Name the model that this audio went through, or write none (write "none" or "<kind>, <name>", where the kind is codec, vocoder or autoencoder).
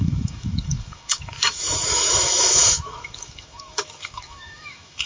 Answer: autoencoder, DAC-VAE